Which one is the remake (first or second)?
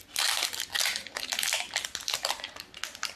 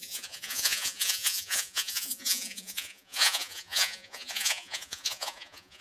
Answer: second